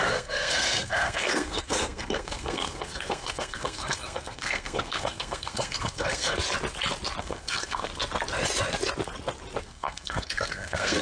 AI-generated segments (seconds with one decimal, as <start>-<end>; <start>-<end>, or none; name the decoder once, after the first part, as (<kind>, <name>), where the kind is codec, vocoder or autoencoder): 0.0-6.4 (codec, SNAC); 7.2-7.9; 9.6-11.0